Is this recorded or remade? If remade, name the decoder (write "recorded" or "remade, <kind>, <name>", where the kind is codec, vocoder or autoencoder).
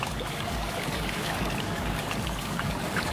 remade, codec, DAC